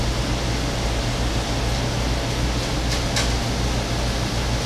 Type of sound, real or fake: real